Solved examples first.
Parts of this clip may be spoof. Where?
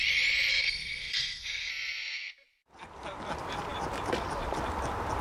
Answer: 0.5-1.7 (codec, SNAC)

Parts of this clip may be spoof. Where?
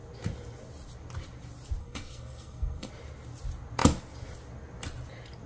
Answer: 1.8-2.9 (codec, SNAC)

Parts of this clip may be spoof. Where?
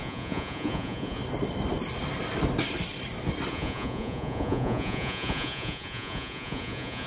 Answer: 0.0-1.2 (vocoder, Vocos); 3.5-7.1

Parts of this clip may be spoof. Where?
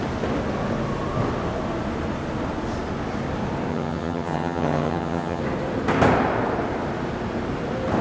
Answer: 3.7-5.4 (vocoder, HiFi-GAN)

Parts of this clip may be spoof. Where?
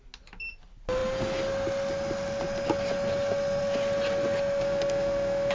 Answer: 4.6-5.5 (autoencoder, DAC-VAE)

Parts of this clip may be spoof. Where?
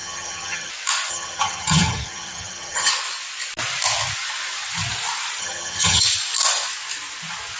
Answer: 0.0-0.7 (vocoder, HiFi-GAN); 1.1-2.9; 5.4-6.0